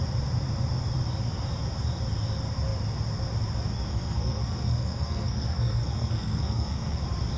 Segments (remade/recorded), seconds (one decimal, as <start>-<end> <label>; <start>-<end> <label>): 0.0-3.9 recorded; 3.9-7.0 remade; 7.0-7.4 recorded